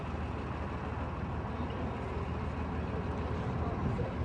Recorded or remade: recorded